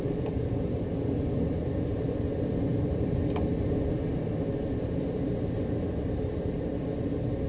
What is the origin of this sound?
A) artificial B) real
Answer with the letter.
B